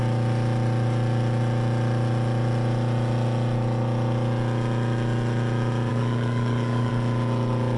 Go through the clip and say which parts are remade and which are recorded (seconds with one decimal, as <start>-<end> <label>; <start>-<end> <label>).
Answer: 0.0-5.9 recorded; 5.9-6.9 remade; 6.9-7.8 recorded